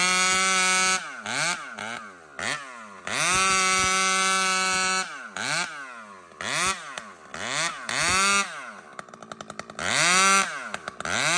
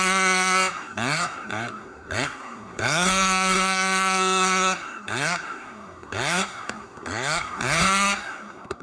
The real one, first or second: first